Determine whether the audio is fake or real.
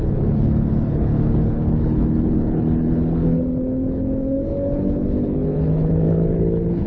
fake